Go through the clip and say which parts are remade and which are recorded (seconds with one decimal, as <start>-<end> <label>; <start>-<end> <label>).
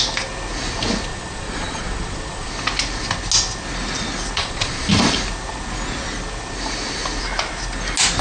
0.0-1.1 recorded; 1.1-2.5 remade; 2.5-4.4 recorded; 4.4-4.9 remade; 4.9-8.2 recorded